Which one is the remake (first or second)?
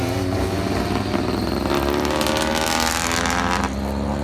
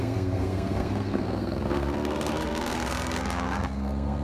second